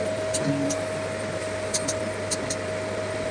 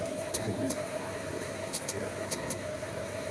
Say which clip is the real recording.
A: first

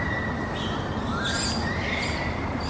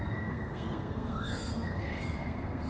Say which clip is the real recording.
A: first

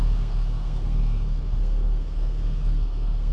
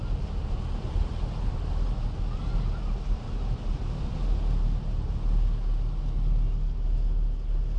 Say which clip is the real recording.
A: second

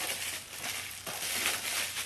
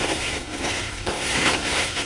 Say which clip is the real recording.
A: first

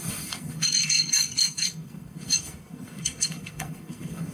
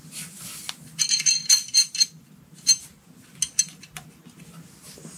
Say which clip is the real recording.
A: second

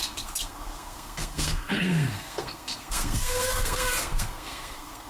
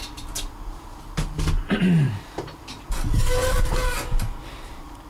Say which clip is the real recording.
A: second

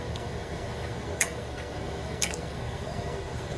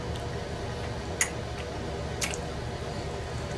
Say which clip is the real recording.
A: second